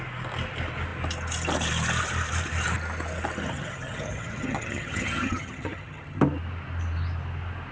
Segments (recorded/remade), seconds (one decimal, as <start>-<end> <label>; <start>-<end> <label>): 0.0-3.5 recorded; 3.5-6.2 remade; 6.2-7.7 recorded